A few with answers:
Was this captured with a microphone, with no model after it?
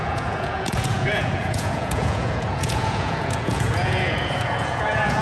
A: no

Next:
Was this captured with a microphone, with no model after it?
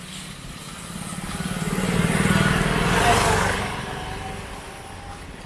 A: yes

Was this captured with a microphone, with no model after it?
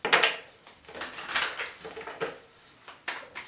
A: yes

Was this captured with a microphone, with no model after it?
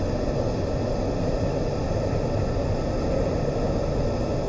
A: yes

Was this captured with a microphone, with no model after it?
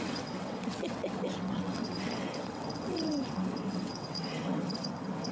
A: no